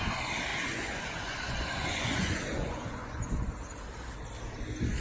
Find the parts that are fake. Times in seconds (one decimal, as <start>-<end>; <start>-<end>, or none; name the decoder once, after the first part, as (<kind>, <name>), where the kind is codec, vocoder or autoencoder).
0.5-3.5 (vocoder, Vocos)